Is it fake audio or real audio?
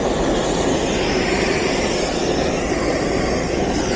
real